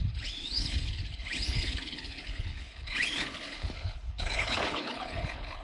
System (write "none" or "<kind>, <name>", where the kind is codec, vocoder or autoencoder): codec, HILCodec